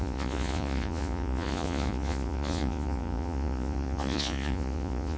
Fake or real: fake